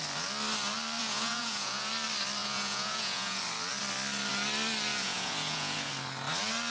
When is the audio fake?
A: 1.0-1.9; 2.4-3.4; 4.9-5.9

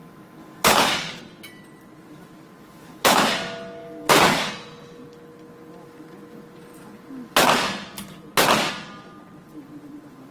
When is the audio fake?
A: 0.0-1.2; 2.6-3.3; 3.8-4.5